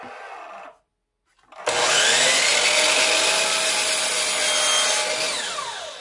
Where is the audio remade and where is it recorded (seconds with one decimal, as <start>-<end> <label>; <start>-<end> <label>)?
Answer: 0.0-6.0 recorded